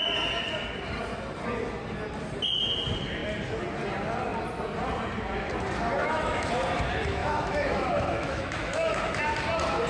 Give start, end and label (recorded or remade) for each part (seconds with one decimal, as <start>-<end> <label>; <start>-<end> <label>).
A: 0.0-6.0 recorded; 6.0-6.5 remade; 6.5-7.2 recorded; 7.2-9.0 remade; 9.0-9.9 recorded